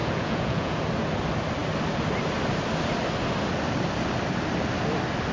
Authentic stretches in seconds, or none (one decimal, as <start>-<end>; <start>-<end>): 0.8-5.3